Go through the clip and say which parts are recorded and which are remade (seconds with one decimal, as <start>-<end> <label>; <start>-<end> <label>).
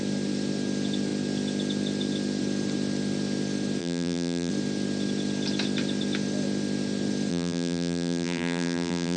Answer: 0.0-3.8 recorded; 3.8-4.5 remade; 4.5-7.3 recorded; 7.3-9.2 remade